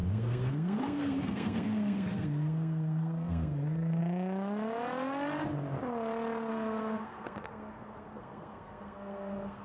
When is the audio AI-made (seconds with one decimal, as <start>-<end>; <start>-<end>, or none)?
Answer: 0.0-4.0; 6.5-9.6